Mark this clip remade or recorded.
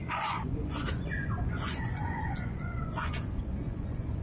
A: remade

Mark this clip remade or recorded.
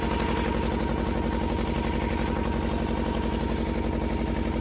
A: recorded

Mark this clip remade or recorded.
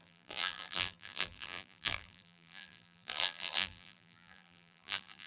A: remade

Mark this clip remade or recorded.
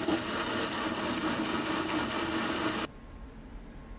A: recorded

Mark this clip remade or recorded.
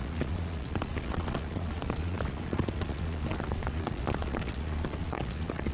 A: remade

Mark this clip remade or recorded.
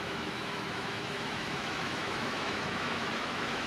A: remade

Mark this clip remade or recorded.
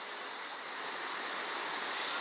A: recorded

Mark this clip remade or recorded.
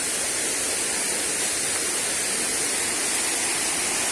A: recorded